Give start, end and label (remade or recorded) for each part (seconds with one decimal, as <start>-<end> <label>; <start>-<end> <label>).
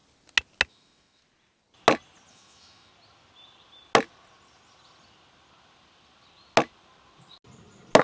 0.0-0.7 recorded; 0.7-1.2 remade; 1.2-2.3 recorded; 2.3-2.9 remade; 2.9-8.0 recorded